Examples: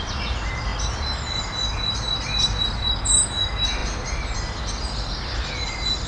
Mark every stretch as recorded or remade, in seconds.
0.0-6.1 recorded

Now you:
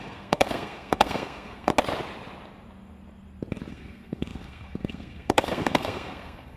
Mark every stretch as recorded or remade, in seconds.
0.0-1.7 remade; 1.7-3.7 recorded; 3.7-6.6 remade

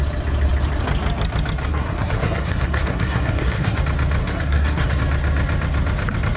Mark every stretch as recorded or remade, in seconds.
0.0-1.6 recorded; 1.6-3.8 remade; 3.8-4.2 recorded; 4.2-5.0 remade; 5.0-6.4 recorded

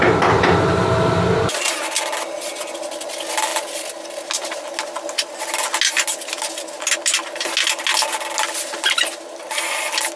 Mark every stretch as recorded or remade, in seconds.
0.0-10.2 recorded